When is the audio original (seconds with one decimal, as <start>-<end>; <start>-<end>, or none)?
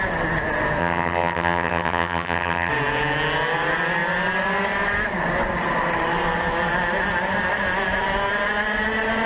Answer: 0.0-0.8; 2.7-9.3